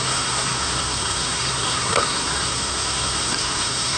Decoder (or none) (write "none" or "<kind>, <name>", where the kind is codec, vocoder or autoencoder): codec, SNAC